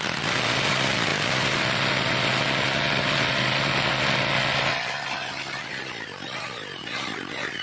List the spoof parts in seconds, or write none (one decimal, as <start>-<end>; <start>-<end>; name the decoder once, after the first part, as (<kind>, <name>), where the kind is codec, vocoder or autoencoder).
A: none